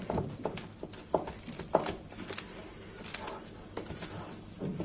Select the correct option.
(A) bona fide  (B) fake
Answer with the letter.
A